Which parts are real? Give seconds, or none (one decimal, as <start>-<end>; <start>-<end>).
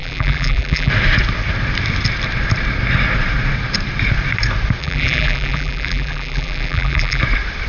0.9-4.8; 7.2-7.7